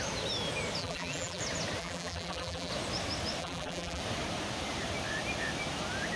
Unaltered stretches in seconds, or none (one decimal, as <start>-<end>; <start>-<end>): 0.0-0.8; 1.4-1.8; 2.7-3.4; 4.0-6.2

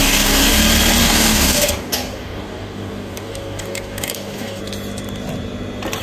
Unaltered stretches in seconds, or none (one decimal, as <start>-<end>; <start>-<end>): 0.6-1.0; 4.6-6.0

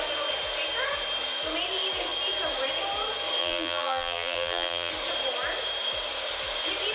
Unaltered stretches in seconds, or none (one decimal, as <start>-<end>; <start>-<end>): 0.0-3.4; 4.9-6.9

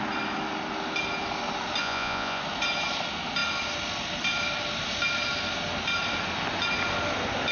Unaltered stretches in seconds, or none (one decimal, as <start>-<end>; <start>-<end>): 0.0-1.8; 2.4-7.5

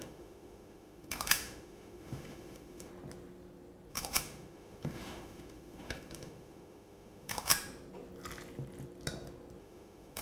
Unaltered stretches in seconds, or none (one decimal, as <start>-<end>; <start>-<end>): 2.9-3.9; 7.5-9.6

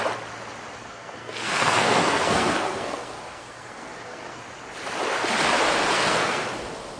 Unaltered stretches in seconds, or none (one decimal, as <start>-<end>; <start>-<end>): 0.0-0.8; 4.4-5.9; 6.5-7.0

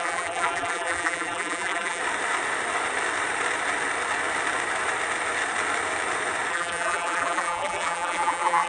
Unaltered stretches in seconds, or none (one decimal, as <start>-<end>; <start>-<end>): 2.0-6.5